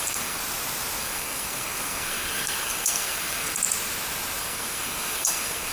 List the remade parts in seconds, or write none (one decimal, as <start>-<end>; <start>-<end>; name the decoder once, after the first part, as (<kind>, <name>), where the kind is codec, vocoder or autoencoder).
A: 0.0-0.4 (codec, SNAC); 1.0-3.6; 4.4-5.7

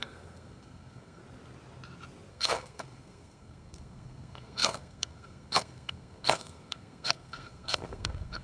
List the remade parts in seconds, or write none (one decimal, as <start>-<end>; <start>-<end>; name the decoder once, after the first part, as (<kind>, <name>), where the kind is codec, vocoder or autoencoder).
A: 0.0-1.2 (codec, SNAC); 2.3-8.4

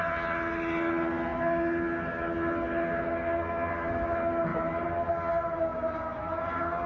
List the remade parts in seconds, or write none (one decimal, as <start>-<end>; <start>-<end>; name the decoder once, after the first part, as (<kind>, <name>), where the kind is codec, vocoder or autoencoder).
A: none